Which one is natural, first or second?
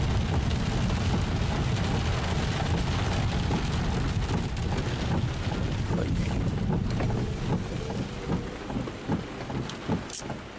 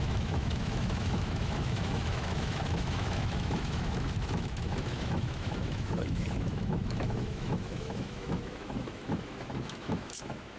first